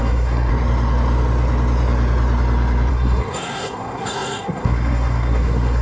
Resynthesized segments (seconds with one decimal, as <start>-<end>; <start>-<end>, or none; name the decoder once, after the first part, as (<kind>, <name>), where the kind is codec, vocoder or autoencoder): 0.0-0.5 (codec, SNAC); 2.9-5.8